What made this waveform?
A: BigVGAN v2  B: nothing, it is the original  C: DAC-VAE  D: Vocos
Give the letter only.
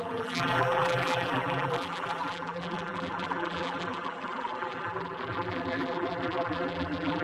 A